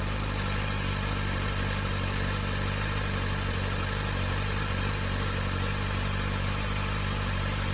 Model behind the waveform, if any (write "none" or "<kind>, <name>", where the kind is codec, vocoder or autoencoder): none